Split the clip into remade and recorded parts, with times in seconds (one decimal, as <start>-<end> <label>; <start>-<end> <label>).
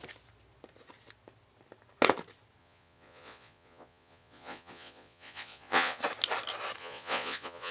0.0-2.6 recorded; 2.6-6.0 remade; 6.0-6.8 recorded; 6.8-7.7 remade